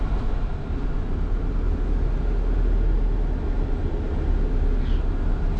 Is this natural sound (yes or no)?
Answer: yes